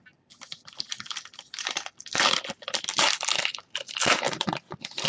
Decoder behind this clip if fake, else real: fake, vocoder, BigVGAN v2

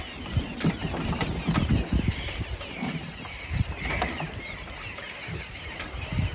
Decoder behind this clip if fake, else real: fake, vocoder, BigVGAN v2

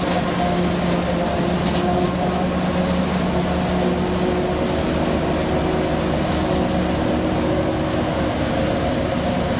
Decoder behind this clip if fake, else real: real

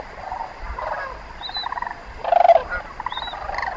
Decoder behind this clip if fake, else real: real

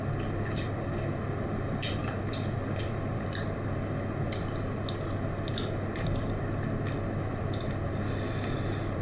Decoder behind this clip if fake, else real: fake, vocoder, BigVGAN v2